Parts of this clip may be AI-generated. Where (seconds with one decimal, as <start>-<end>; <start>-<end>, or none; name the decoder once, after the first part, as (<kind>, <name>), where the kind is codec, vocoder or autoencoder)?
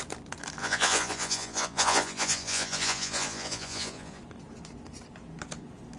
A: 0.6-4.2 (vocoder, Vocos)